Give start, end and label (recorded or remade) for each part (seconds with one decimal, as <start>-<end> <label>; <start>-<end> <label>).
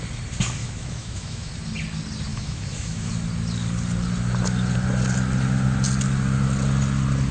0.0-0.6 recorded; 0.6-1.5 remade; 1.5-2.3 recorded; 2.3-3.1 remade; 3.1-7.3 recorded